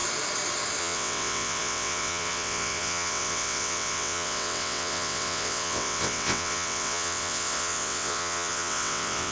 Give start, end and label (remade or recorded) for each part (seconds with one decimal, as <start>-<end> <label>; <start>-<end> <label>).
0.0-0.8 recorded; 0.8-9.3 remade